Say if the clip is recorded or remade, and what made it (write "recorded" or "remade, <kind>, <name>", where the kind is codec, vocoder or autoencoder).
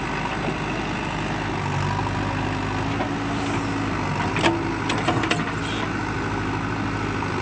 recorded